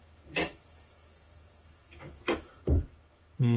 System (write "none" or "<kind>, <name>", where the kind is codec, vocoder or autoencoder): autoencoder, DAC-VAE